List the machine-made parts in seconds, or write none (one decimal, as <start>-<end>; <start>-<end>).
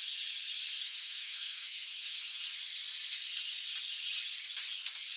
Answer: 0.8-2.4